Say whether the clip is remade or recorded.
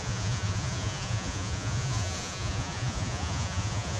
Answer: remade